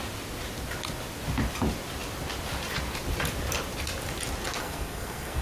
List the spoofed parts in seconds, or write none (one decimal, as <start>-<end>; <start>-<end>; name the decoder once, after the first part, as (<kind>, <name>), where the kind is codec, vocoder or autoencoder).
4.6-5.4 (codec, SNAC)